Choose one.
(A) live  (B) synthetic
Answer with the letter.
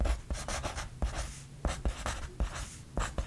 A